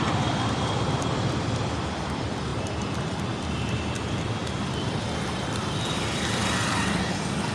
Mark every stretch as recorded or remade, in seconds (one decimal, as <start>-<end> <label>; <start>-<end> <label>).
0.0-7.5 remade